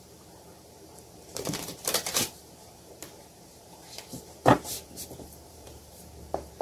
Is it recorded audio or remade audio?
remade